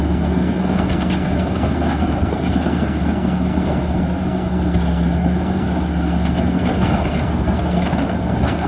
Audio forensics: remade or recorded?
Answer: remade